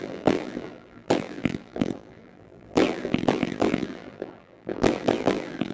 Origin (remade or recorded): remade